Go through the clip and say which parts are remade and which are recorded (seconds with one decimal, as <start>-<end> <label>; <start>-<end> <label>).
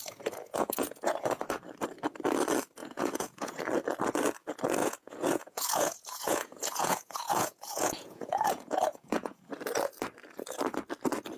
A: 0.0-1.4 remade; 1.4-2.8 recorded; 2.8-3.6 remade; 3.6-4.8 recorded; 4.8-9.5 remade; 9.5-11.4 recorded